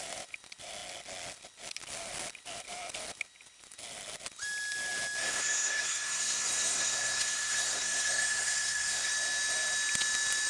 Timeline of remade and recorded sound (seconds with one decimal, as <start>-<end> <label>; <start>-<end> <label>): 0.0-5.2 recorded; 5.2-9.1 remade; 9.1-10.5 recorded